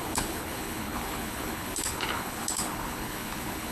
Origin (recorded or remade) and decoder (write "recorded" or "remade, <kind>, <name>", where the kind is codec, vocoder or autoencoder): remade, codec, HILCodec